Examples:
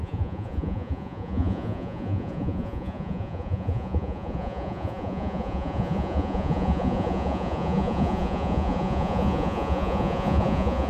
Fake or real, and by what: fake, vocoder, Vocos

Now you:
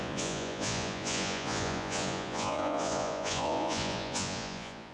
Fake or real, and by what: fake, vocoder, Vocos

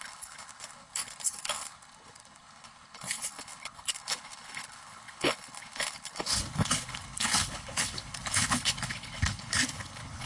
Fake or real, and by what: fake, codec, HILCodec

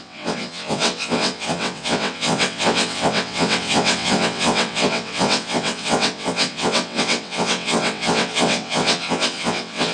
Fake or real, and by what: fake, vocoder, WaveNeXt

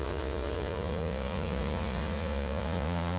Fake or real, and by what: fake, vocoder, Vocos